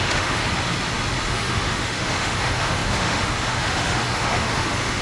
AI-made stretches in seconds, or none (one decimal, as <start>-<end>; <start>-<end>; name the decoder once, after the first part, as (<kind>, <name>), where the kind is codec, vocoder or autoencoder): 0.0-0.4 (autoencoder, DAC-VAE); 1.3-5.0